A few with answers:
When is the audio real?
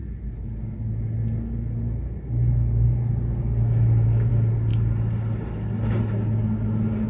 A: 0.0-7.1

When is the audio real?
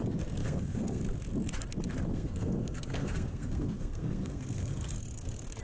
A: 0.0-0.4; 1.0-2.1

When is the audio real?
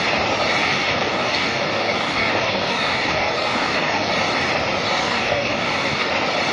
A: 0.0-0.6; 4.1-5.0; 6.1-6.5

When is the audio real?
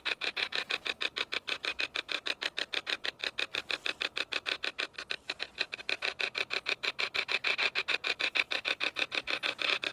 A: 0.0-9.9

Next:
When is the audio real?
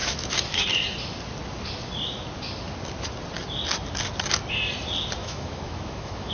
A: 0.6-5.2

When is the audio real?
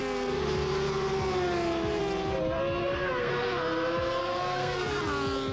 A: 0.0-2.8; 3.3-4.2; 5.0-5.5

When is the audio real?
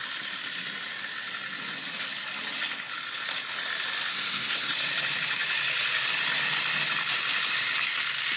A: 0.0-4.1; 4.7-8.4